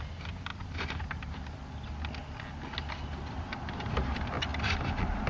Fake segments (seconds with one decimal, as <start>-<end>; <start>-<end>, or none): none